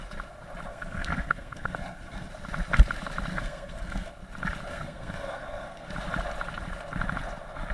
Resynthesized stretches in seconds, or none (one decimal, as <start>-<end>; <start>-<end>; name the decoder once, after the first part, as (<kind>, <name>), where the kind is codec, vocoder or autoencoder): 0.7-2.3 (codec, SNAC); 3.3-4.1; 4.7-5.9